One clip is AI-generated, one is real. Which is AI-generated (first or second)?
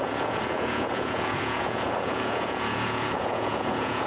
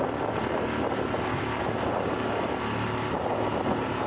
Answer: first